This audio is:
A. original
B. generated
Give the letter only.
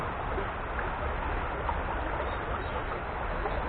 A